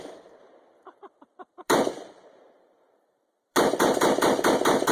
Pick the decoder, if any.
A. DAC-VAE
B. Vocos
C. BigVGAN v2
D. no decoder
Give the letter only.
C